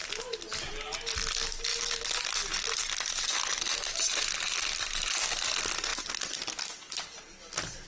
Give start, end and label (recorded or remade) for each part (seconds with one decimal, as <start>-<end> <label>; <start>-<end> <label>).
0.0-7.9 recorded